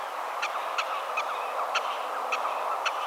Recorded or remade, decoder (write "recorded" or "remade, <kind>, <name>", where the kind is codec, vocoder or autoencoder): remade, vocoder, BigVGAN v2